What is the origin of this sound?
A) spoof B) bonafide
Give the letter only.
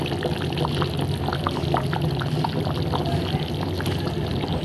A